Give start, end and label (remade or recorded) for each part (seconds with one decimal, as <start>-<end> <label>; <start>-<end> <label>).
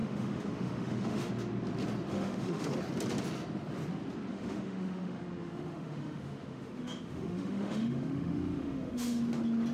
0.0-1.3 remade; 1.3-2.1 recorded; 2.1-2.7 remade; 2.7-4.3 recorded; 4.3-9.2 remade; 9.2-9.7 recorded